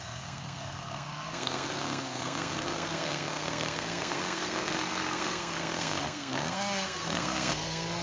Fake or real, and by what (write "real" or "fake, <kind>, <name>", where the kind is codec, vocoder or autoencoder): fake, codec, SNAC